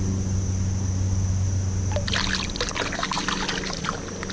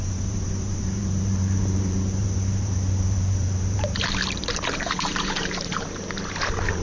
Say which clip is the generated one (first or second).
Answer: second